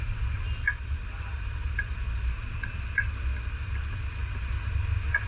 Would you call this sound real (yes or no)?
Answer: yes